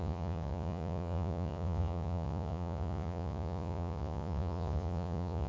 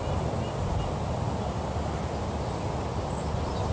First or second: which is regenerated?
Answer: first